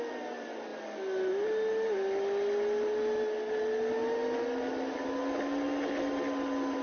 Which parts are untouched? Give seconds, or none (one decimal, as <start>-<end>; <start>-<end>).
0.0-6.8